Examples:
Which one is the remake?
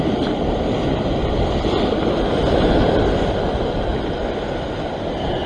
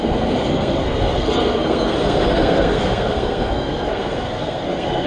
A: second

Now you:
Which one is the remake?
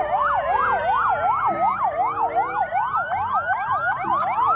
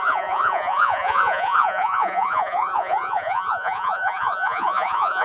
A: second